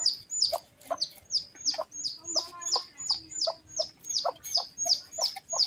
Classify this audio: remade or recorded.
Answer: recorded